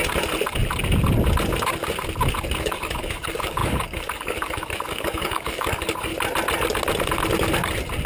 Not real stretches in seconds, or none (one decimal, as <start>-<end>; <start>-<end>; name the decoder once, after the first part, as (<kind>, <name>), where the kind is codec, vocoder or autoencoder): 2.6-6.1 (codec, DAC)